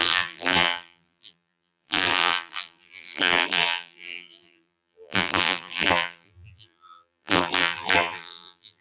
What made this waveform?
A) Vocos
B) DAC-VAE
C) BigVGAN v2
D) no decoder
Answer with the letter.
C